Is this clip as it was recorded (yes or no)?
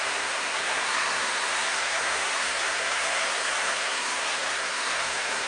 no